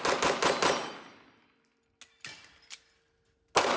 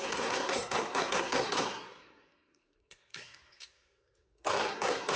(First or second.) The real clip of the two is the first